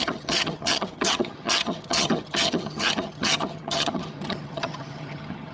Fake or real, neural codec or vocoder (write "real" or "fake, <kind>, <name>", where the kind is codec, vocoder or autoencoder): fake, vocoder, HiFi-GAN